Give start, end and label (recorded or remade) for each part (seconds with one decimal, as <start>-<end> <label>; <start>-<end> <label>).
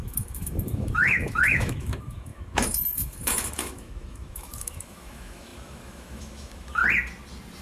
0.0-6.8 remade; 6.8-7.6 recorded